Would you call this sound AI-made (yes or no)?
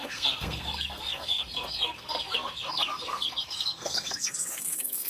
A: yes